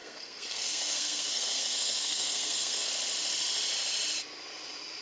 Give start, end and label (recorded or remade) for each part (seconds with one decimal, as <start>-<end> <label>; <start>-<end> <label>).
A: 0.0-2.9 remade; 2.9-5.0 recorded